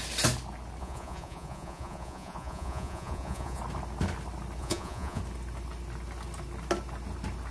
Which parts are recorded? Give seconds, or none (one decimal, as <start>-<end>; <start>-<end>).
0.0-0.8; 3.6-4.6; 5.2-7.5